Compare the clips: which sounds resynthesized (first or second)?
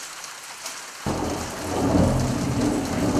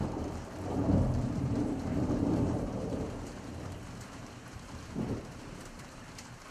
second